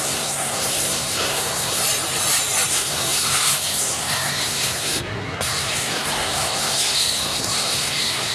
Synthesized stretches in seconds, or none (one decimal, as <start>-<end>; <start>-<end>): 0.0-1.8; 2.7-8.3